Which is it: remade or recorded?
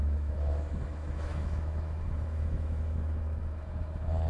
remade